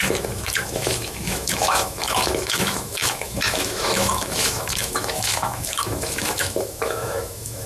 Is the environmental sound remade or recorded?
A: remade